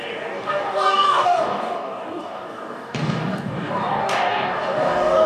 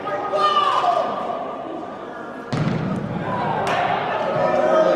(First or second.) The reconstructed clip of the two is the first